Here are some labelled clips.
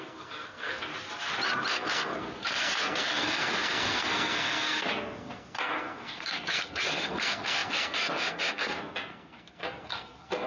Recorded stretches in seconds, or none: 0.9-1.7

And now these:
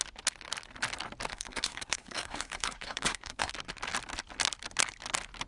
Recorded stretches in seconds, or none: 0.0-1.3; 3.5-5.5

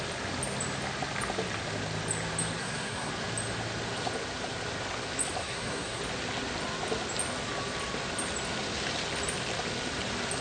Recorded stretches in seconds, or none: 0.0-2.6; 3.1-5.4; 6.0-10.4